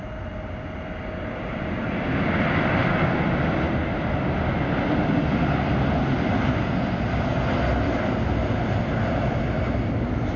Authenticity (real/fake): real